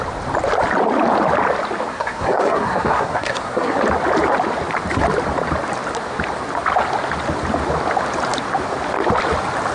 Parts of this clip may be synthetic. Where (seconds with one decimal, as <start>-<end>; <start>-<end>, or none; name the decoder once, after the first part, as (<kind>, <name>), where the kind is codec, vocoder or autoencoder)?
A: 1.9-3.8 (codec, SNAC)